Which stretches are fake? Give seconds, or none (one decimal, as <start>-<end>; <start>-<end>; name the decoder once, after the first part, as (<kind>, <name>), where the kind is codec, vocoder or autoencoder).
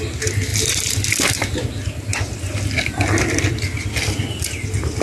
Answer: none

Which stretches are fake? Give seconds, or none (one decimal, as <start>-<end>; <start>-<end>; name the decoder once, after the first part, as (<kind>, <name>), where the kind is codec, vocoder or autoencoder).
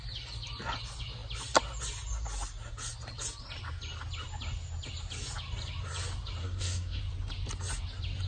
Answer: 6.4-7.0 (codec, SNAC)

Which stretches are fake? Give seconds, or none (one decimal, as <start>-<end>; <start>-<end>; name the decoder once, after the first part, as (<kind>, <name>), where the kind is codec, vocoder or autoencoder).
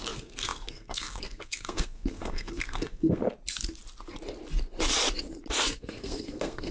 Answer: 0.0-3.2 (codec, SNAC); 5.6-6.7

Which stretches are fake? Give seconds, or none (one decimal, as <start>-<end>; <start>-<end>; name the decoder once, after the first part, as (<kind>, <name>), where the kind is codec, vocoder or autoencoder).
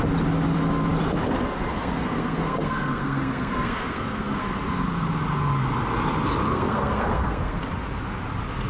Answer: 1.7-4.4 (codec, SNAC); 6.5-7.6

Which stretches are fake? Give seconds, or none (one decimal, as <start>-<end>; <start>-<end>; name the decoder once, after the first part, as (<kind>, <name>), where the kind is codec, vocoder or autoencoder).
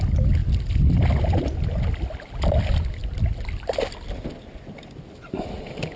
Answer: none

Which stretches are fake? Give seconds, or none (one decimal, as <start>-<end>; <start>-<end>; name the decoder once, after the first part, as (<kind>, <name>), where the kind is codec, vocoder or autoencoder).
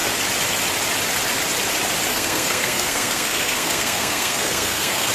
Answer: 2.1-5.1 (codec, SNAC)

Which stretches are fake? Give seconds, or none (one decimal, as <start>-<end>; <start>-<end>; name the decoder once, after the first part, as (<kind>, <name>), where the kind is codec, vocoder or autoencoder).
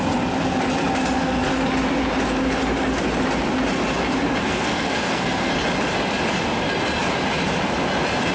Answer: 4.4-5.5 (codec, SNAC)